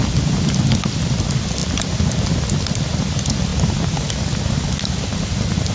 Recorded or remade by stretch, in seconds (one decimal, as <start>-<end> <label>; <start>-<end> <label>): 0.0-5.7 recorded

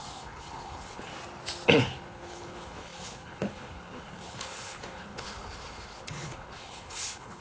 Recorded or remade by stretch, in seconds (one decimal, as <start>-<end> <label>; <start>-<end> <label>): 0.0-1.1 remade; 1.1-1.8 recorded; 1.8-7.4 remade

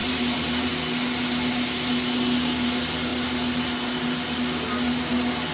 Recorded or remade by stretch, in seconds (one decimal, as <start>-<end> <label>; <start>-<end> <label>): 0.0-0.7 remade; 0.7-5.5 recorded

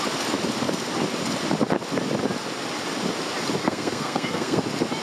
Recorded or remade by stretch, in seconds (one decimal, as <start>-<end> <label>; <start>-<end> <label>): 0.0-3.6 recorded; 3.6-4.6 remade; 4.6-5.0 recorded